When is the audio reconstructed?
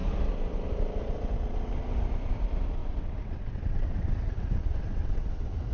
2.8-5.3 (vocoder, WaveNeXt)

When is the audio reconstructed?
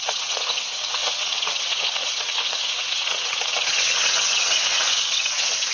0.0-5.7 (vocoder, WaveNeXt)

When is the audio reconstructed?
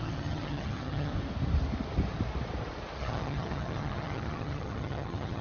0.0-1.1 (vocoder, HiFi-GAN); 3.0-5.4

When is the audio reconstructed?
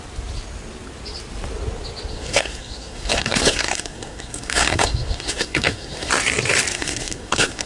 2.1-6.1 (codec, SNAC); 6.7-7.7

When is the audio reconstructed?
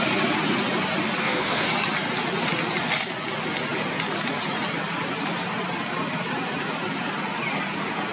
1.2-1.7 (codec, SNAC)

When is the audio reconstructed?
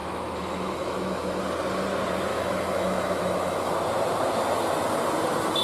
0.0-1.4 (autoencoder, DAC-VAE); 2.3-3.7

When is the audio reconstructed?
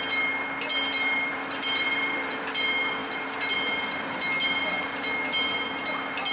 1.3-2.5 (vocoder, BigVGAN v2); 3.0-4.1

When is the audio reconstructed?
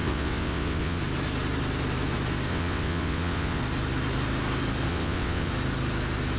0.0-1.0 (vocoder, WaveNeXt); 2.5-3.6; 4.9-5.5